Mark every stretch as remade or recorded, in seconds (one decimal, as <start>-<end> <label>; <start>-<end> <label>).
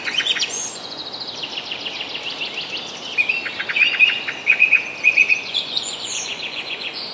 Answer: 0.0-1.0 remade; 1.0-5.3 recorded; 5.3-7.1 remade